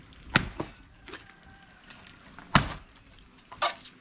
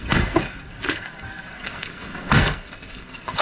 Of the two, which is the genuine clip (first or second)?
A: first